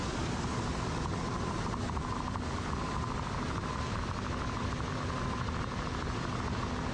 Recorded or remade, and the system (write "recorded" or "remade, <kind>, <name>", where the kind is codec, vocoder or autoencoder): recorded